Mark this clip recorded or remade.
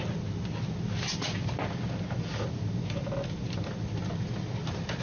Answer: recorded